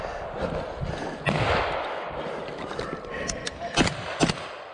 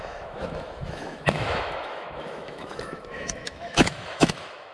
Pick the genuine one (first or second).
first